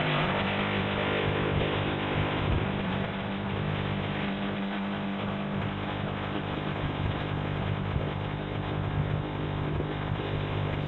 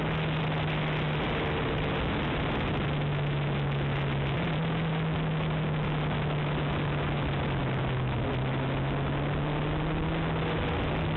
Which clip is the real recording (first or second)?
second